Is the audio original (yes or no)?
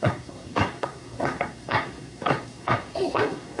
no